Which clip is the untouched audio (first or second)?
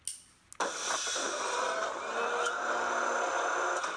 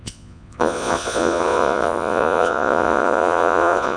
first